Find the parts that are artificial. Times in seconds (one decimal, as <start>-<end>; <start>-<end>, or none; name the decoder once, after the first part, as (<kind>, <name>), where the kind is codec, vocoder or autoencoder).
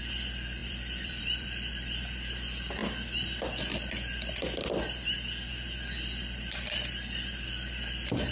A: 0.6-1.7 (vocoder, BigVGAN v2)